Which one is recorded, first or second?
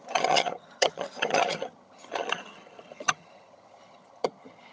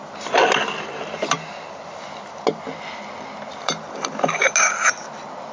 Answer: second